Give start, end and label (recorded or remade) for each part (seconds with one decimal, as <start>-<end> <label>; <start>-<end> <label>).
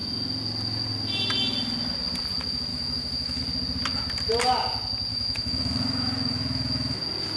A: 0.0-2.7 recorded; 2.7-3.4 remade; 3.4-5.1 recorded; 5.1-7.0 remade; 7.0-7.4 recorded